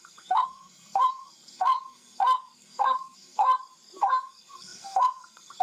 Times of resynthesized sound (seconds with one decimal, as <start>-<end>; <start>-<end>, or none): 0.0-3.5; 4.0-5.6